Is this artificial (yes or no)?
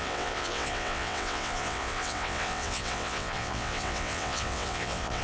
yes